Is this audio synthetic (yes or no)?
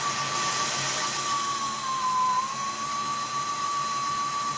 no